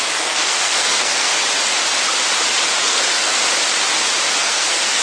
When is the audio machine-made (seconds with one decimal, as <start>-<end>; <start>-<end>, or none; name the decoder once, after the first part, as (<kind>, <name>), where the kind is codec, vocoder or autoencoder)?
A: 0.0-1.4 (codec, SNAC); 2.8-3.4; 4.4-5.0